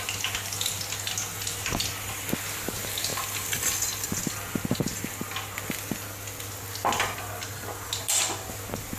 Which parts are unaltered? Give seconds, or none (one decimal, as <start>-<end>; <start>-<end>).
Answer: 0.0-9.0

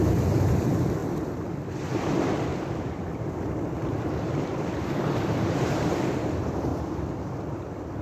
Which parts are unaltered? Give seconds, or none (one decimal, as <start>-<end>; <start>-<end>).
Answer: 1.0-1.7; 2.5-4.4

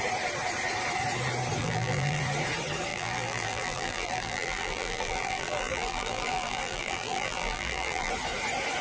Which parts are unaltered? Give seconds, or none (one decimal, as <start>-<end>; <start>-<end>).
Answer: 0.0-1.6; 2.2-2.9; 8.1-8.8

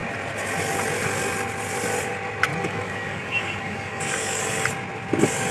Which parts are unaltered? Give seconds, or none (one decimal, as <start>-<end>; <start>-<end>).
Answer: 0.0-2.5; 4.4-5.5